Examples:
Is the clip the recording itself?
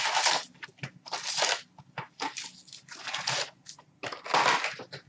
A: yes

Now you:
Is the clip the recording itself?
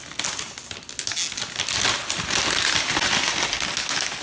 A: yes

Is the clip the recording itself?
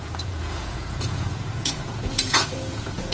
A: no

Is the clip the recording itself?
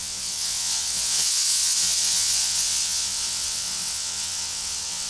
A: no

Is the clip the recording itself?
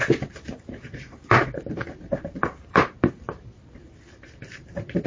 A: no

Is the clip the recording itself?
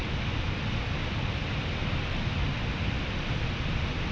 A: yes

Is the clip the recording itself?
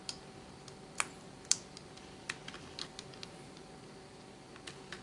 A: yes